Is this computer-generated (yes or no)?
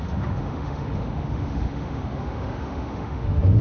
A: yes